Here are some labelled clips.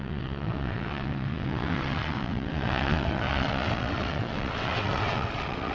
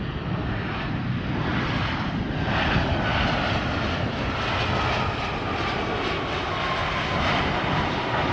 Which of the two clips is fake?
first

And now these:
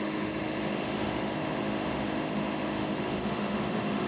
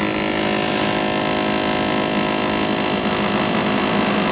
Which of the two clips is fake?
first